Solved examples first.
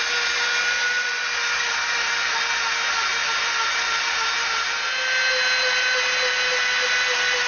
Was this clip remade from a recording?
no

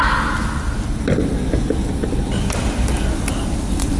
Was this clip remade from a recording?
no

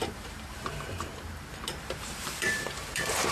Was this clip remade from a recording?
yes